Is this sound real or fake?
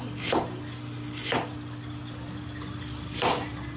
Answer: real